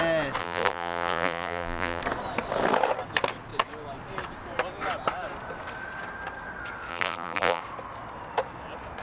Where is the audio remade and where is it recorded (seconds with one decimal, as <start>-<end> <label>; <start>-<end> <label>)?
0.0-0.4 recorded; 0.4-2.0 remade; 2.0-6.9 recorded; 6.9-7.6 remade; 7.6-9.0 recorded